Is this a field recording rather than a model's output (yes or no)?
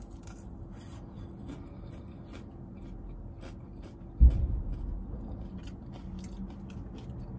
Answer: yes